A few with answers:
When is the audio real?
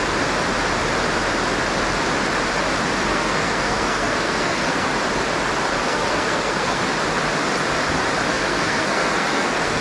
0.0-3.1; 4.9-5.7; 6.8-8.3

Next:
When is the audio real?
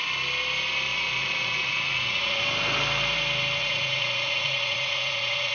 0.0-0.9; 2.4-3.6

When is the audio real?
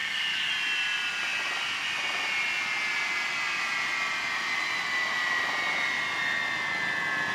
0.5-7.3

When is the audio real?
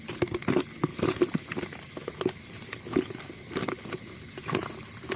0.0-5.2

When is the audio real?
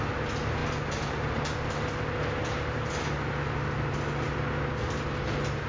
0.0-5.7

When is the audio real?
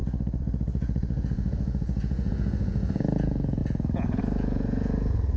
none